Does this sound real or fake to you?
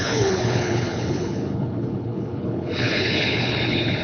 fake